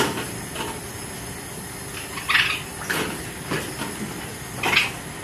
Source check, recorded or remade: recorded